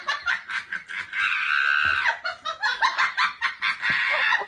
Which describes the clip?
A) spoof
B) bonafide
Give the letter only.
B